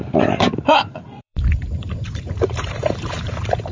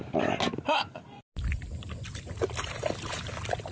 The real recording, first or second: second